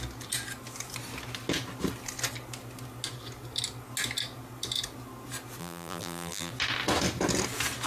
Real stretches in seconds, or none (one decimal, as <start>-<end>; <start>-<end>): 0.0-5.6; 6.5-7.9